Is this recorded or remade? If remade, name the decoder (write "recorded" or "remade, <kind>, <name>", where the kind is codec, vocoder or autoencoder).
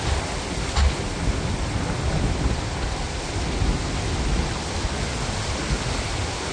recorded